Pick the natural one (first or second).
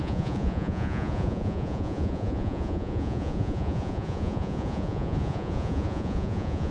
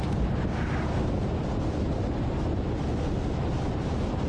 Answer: second